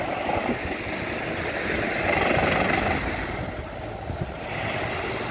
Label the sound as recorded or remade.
recorded